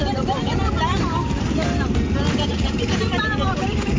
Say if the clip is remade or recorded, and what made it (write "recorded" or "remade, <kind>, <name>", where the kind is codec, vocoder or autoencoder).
remade, vocoder, BigVGAN v2